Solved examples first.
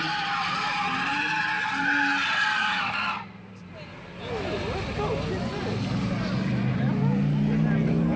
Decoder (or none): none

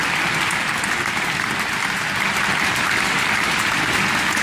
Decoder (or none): none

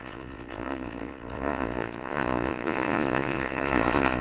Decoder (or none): vocoder, Vocos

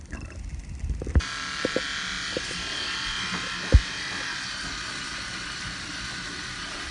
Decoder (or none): none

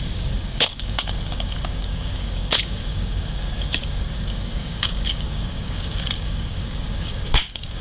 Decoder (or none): codec, DAC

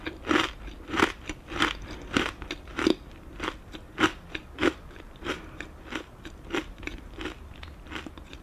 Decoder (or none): vocoder, BigVGAN v2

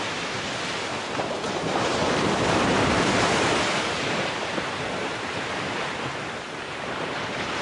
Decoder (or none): vocoder, BigVGAN v2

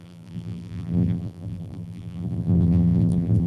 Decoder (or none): vocoder, BigVGAN v2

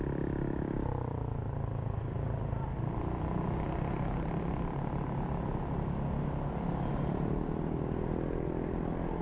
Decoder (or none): none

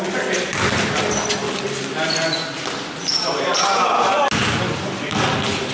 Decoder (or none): none